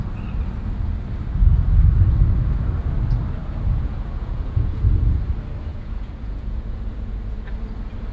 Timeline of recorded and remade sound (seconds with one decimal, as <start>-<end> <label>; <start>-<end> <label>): 0.0-3.4 recorded; 3.4-5.2 remade; 5.2-5.7 recorded; 5.7-7.5 remade; 7.5-8.1 recorded